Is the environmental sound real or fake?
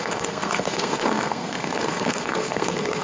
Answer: fake